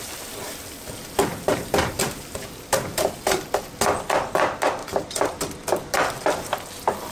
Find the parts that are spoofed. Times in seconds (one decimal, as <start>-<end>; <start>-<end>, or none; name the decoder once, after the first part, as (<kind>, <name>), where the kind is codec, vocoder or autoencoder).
1.3-3.2 (vocoder, BigVGAN v2); 4.8-5.4